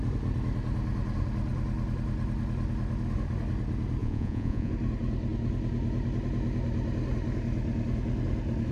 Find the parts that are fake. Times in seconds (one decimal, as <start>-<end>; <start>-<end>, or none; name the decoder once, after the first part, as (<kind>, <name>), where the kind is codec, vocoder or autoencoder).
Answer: 4.0-4.7 (vocoder, Vocos)